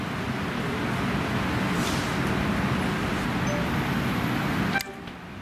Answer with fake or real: real